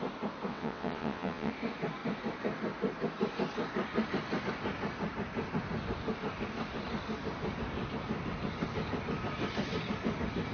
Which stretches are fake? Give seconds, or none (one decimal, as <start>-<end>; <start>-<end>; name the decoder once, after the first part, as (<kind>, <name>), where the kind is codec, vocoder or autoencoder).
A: 0.5-1.5 (vocoder, WaveNeXt)

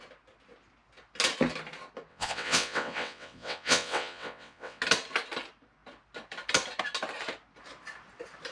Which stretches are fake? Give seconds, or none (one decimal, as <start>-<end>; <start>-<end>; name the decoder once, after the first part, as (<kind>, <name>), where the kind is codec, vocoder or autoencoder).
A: 2.1-4.8 (vocoder, WaveNeXt)

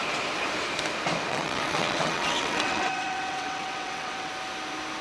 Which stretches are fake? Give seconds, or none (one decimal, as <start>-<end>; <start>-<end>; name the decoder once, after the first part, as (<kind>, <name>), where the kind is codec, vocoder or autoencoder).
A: 1.3-4.3 (vocoder, WaveNeXt)

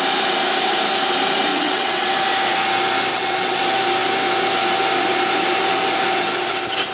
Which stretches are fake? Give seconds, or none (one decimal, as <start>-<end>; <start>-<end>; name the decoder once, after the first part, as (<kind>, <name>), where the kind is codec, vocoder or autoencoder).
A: 1.5-2.1 (vocoder, WaveNeXt); 3.1-3.6

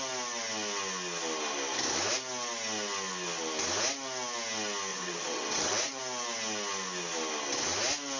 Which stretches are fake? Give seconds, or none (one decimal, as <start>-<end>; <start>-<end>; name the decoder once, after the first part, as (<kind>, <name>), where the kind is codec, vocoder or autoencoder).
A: 4.9-6.0 (vocoder, WaveNeXt)

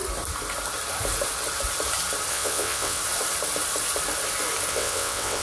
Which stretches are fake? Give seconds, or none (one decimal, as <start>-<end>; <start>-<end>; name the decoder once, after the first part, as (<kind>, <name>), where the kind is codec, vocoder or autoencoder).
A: 2.3-3.0 (vocoder, WaveNeXt); 4.7-5.4

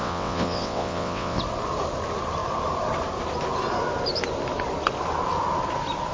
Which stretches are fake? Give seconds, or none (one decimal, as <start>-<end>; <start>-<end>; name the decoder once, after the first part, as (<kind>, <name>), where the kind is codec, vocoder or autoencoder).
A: 0.0-1.4 (vocoder, WaveNeXt)

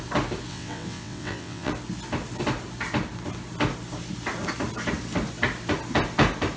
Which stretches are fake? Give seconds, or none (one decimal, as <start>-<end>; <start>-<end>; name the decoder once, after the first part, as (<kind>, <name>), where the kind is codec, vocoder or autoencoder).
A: 0.5-1.7 (vocoder, WaveNeXt)